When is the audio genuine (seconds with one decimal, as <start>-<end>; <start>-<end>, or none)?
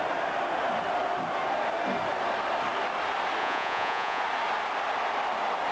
0.0-3.4; 4.2-5.7